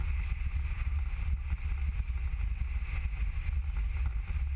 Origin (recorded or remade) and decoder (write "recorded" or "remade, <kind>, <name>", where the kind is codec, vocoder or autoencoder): recorded